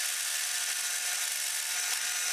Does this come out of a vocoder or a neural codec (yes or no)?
no